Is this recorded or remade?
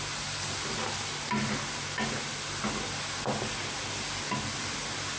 recorded